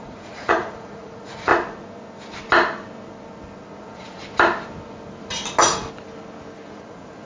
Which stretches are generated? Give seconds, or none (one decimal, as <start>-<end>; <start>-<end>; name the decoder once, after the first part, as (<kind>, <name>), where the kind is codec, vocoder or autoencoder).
0.0-1.5 (vocoder, Vocos); 3.8-4.2; 6.7-7.3